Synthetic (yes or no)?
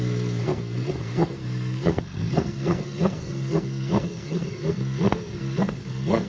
yes